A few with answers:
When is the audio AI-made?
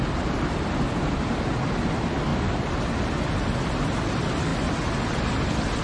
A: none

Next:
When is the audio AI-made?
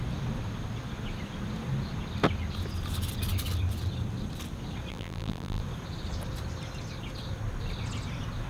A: 4.9-5.6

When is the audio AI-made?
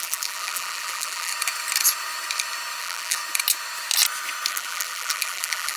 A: 0.0-1.3; 2.8-3.2; 4.5-5.8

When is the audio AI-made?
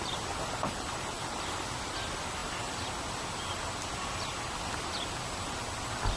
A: 0.0-2.4; 4.4-4.9; 5.4-6.2